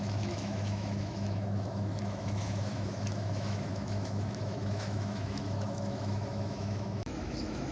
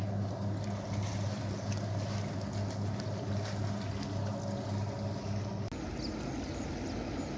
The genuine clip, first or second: second